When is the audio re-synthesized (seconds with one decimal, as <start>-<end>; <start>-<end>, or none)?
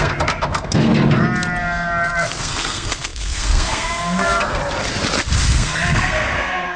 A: 0.0-0.9; 2.4-4.6; 5.4-6.8